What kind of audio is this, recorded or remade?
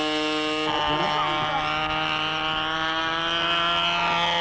recorded